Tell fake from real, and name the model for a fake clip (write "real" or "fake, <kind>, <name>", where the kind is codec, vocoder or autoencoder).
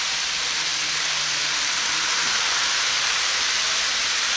real